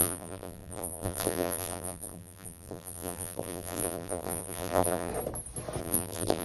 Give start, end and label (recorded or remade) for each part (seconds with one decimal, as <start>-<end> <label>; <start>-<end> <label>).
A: 0.0-5.1 remade; 5.1-5.8 recorded; 5.8-6.4 remade